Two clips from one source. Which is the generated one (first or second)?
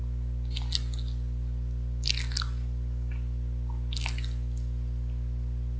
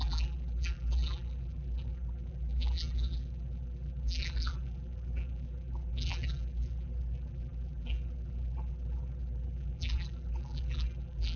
second